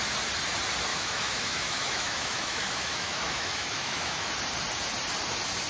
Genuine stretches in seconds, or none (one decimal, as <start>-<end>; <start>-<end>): 0.0-0.9; 4.3-5.7